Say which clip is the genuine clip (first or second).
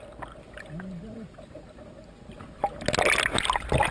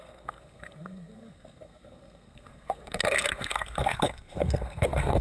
first